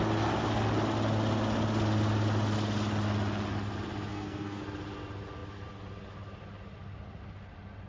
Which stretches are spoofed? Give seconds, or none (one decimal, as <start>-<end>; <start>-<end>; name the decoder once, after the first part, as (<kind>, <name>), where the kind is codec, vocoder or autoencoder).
4.1-4.6 (codec, SNAC)